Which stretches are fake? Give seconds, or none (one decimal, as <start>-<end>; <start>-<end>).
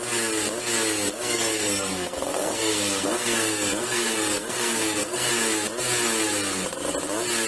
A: 1.1-5.3